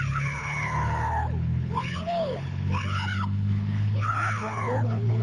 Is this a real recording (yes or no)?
no